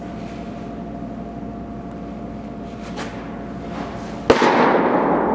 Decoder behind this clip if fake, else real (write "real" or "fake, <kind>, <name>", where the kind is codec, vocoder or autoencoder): real